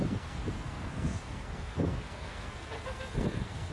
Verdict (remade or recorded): remade